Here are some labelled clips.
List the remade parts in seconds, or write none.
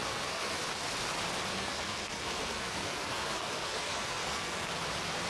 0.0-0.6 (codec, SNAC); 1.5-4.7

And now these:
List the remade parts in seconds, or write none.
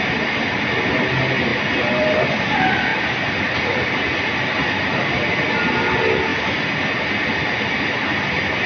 none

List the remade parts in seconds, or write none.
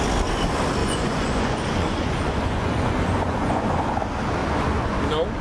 0.8-4.0 (vocoder, Vocos); 4.4-5.0